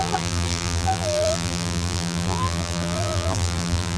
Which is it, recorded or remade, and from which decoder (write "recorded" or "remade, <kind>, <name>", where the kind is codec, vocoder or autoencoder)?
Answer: remade, vocoder, BigVGAN v2